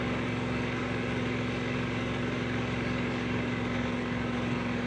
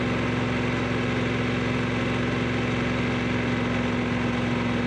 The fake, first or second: first